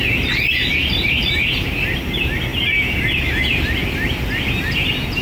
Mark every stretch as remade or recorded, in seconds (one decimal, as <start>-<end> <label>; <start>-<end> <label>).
0.0-0.8 recorded; 0.8-2.0 remade; 2.0-5.2 recorded